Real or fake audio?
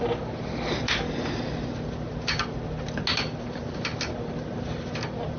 real